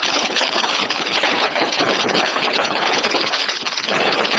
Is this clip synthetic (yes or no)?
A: yes